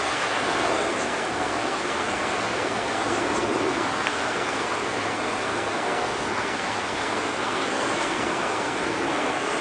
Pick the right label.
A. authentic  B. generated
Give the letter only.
B